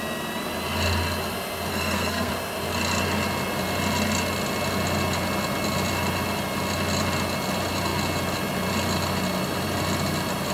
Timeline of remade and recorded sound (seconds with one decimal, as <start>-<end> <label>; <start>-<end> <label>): 0.0-1.7 recorded; 1.7-2.3 remade; 2.3-10.5 recorded